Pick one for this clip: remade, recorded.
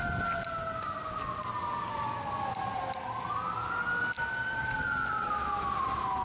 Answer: recorded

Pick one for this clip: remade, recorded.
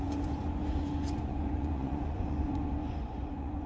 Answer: remade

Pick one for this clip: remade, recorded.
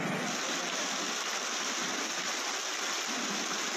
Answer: recorded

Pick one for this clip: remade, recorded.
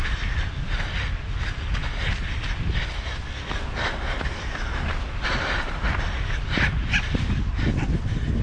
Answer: recorded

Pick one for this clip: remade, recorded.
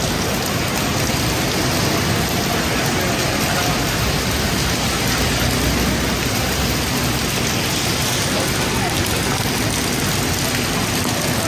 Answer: recorded